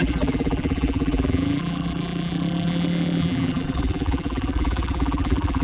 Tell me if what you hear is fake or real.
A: fake